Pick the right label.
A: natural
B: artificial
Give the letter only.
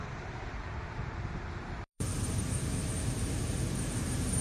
B